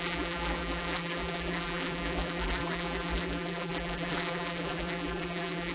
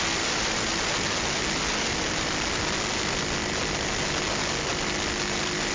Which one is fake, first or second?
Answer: first